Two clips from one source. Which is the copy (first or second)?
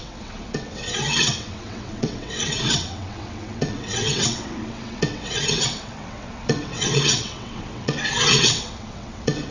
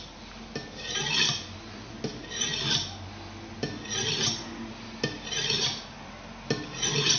first